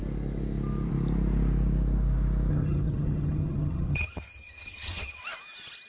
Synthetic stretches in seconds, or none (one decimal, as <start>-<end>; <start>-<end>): 2.5-5.2